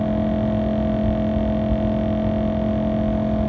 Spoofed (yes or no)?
no